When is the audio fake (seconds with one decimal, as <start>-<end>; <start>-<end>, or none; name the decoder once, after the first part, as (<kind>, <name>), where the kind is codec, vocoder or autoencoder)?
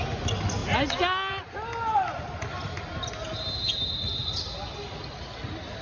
none